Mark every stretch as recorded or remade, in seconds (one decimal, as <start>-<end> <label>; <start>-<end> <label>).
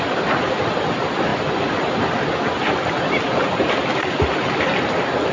0.0-5.3 recorded